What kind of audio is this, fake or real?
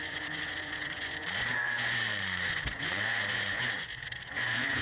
fake